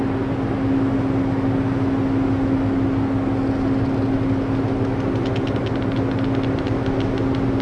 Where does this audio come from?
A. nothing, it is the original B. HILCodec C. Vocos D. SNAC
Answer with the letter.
A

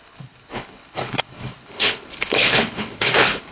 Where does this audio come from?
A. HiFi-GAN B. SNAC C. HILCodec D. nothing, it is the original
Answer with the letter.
C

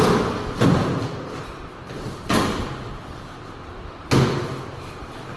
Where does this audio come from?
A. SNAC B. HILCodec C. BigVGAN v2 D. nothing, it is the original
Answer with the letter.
D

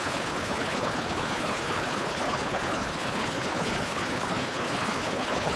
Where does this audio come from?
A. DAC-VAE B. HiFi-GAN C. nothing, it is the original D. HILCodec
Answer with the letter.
D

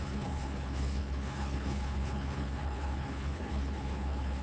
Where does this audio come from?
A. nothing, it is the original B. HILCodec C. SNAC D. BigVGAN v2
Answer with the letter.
B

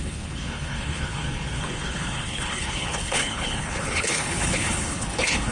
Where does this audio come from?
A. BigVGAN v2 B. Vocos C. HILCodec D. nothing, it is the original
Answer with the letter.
C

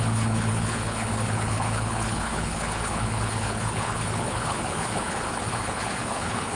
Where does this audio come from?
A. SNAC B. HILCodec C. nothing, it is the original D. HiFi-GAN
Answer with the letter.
B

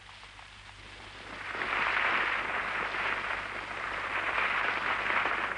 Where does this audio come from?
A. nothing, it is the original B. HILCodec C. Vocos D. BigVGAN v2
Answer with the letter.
A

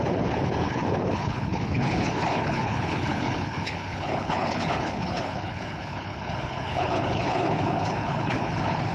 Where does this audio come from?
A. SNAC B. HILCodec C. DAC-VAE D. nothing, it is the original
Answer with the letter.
B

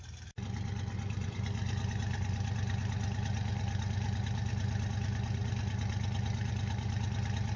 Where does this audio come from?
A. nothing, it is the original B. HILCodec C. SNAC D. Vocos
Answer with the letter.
A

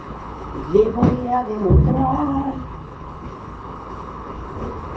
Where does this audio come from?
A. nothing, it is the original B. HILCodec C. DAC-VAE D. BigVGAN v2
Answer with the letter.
B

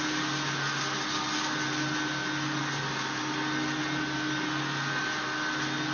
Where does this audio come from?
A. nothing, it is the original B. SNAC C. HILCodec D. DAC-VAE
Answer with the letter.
A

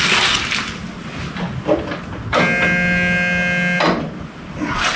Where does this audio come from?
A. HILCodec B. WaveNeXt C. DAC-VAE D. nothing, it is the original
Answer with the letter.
D